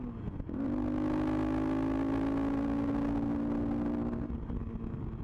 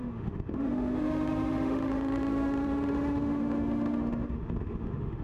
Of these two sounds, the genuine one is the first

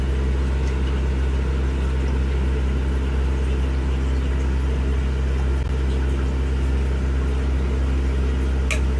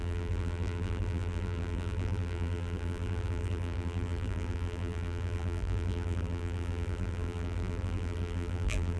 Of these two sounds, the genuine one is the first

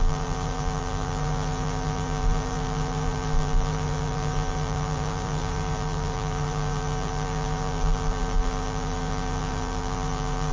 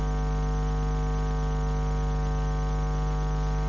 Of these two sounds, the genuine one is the second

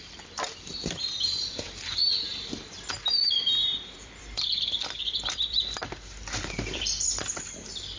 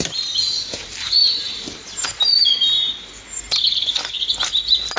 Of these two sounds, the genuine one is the second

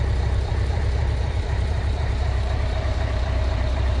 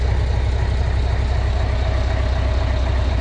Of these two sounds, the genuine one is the second